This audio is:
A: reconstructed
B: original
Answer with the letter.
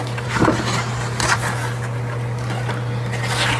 B